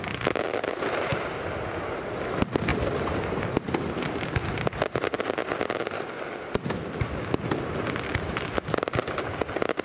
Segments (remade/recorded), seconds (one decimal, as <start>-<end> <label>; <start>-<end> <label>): 0.0-9.8 recorded